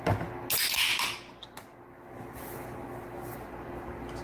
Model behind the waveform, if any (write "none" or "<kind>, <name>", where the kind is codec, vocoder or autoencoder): none